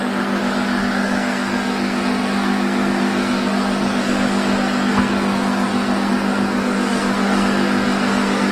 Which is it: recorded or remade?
remade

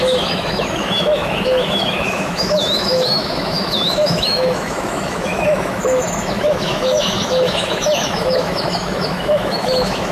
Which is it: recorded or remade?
remade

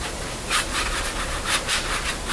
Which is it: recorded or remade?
recorded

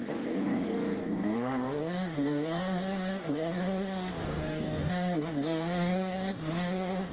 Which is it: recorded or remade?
remade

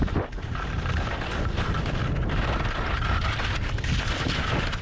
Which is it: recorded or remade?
recorded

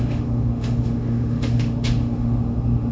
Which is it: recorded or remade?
remade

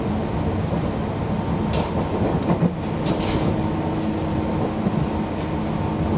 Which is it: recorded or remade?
recorded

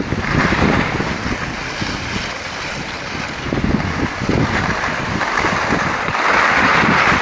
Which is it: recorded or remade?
recorded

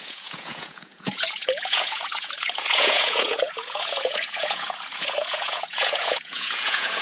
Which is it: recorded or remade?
remade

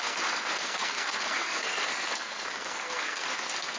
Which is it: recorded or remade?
remade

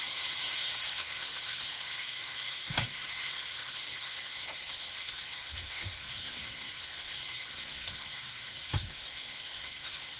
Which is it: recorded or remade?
remade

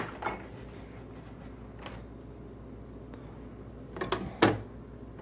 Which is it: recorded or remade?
recorded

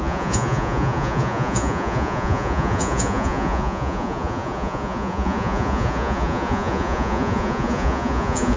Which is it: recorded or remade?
remade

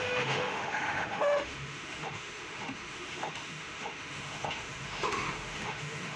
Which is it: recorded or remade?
remade